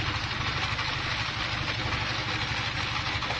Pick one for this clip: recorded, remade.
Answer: recorded